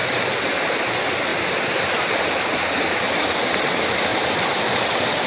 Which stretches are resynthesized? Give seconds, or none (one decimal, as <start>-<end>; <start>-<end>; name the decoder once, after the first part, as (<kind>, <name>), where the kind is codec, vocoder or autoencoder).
0.0-0.9 (vocoder, BigVGAN v2); 1.3-2.4; 4.1-5.3